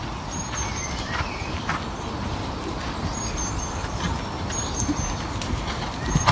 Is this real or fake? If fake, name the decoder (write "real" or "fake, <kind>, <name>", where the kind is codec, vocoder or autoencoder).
real